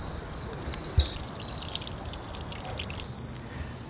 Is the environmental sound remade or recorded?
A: recorded